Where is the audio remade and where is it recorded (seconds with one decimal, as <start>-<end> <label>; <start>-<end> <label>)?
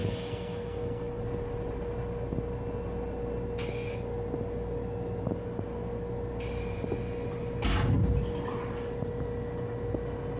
0.0-1.2 remade; 1.2-10.4 recorded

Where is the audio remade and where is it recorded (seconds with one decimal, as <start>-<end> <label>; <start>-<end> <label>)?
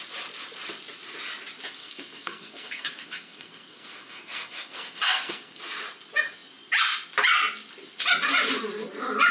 0.0-1.8 recorded; 1.8-5.6 remade; 5.6-9.3 recorded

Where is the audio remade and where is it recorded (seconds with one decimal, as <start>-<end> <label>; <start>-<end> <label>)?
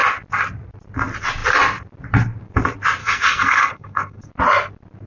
0.0-3.0 recorded; 3.0-4.3 remade; 4.3-5.1 recorded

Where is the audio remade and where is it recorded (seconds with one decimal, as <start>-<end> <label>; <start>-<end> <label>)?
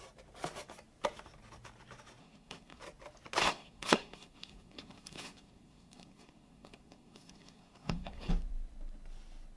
0.0-2.2 recorded; 2.2-2.8 remade; 2.8-3.4 recorded; 3.4-8.3 remade; 8.3-9.6 recorded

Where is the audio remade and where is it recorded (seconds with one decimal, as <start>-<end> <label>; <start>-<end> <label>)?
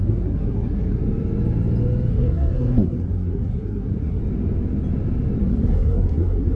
0.0-1.0 remade; 1.0-2.1 recorded; 2.1-4.2 remade; 4.2-5.4 recorded; 5.4-6.6 remade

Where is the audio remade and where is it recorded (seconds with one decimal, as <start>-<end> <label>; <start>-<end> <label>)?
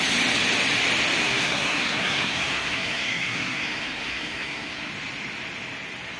0.0-1.2 recorded; 1.2-4.9 remade; 4.9-6.2 recorded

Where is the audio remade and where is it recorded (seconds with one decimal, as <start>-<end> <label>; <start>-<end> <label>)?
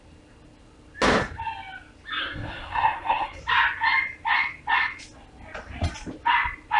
0.0-2.2 recorded; 2.2-3.4 remade; 3.4-6.8 recorded